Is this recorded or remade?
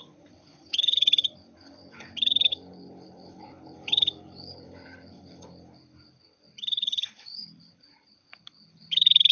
remade